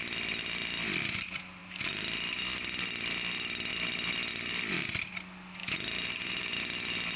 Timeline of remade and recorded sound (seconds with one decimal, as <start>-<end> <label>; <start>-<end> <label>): 0.0-7.2 recorded